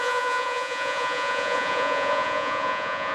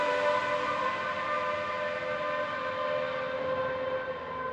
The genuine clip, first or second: second